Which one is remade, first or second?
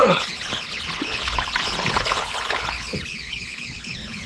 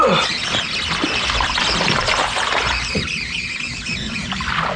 first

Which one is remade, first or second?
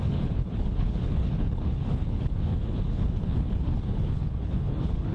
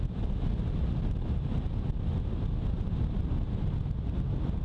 first